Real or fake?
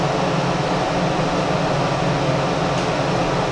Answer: real